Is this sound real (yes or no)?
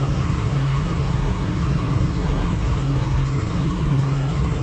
no